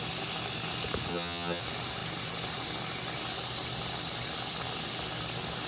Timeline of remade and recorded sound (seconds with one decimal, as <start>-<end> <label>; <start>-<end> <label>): 0.0-1.1 recorded; 1.1-1.6 remade; 1.6-5.7 recorded